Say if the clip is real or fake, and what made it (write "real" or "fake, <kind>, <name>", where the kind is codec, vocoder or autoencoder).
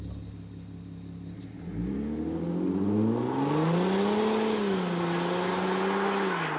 real